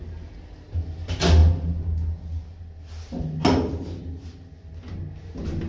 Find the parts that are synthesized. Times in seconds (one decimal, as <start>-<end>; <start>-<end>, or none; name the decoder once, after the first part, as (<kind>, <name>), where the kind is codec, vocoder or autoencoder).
none